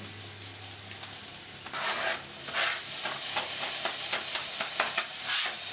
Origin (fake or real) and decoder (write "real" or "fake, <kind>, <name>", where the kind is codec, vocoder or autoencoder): real